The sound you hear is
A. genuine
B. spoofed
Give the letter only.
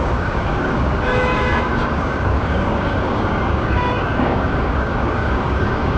B